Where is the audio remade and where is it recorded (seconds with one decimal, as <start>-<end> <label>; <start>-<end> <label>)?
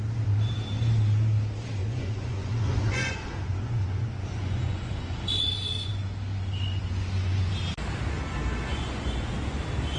0.0-1.8 recorded; 1.8-5.9 remade; 5.9-6.8 recorded; 6.8-7.5 remade; 7.5-8.7 recorded; 8.7-9.6 remade; 9.6-10.0 recorded